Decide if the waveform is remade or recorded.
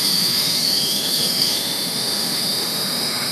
remade